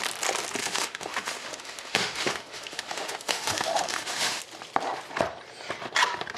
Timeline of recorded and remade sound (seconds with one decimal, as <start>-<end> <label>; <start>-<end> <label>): 0.0-0.6 recorded; 0.6-4.4 remade; 4.4-6.4 recorded